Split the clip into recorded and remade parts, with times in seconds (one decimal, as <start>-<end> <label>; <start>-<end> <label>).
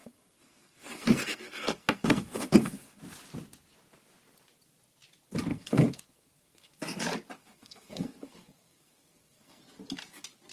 0.0-3.0 remade; 3.0-5.5 recorded; 5.5-6.7 remade; 6.7-7.4 recorded; 7.4-9.6 remade; 9.6-10.5 recorded